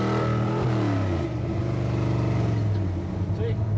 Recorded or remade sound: recorded